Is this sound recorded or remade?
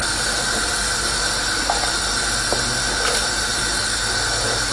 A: recorded